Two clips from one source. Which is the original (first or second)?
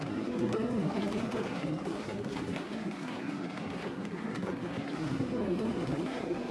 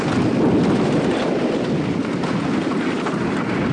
second